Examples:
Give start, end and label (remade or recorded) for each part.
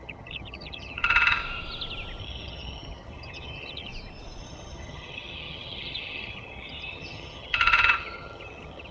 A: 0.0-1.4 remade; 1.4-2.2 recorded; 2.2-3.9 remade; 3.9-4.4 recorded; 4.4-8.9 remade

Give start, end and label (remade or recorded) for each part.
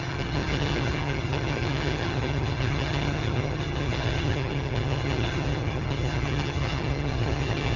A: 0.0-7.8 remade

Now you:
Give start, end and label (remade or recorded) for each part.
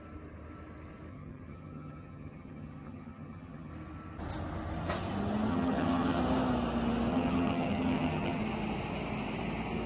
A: 0.0-1.1 recorded; 1.1-3.7 remade; 3.7-5.5 recorded; 5.5-6.2 remade; 6.2-7.1 recorded; 7.1-8.4 remade; 8.4-9.9 recorded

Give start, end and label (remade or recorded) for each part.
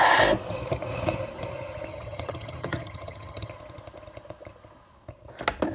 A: 0.0-1.9 recorded; 1.9-3.5 remade; 3.5-5.7 recorded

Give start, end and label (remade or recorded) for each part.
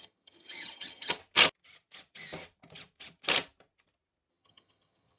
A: 0.0-1.2 remade; 1.2-4.3 recorded; 4.3-5.2 remade